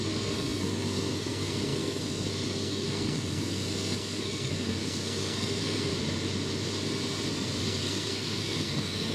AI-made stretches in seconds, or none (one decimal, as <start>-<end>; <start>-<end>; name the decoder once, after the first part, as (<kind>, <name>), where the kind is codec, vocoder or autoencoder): 0.0-5.9 (codec, SNAC); 7.3-9.1